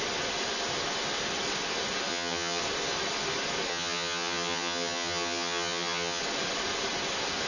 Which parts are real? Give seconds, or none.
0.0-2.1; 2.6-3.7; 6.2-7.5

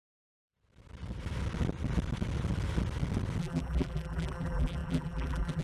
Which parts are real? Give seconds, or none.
0.0-3.4